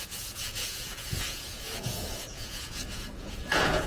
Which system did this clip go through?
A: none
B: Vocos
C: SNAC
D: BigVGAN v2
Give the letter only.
B